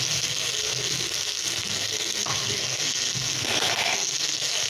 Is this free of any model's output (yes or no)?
no